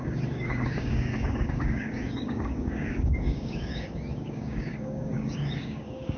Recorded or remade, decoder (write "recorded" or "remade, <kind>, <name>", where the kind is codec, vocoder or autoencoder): remade, codec, DAC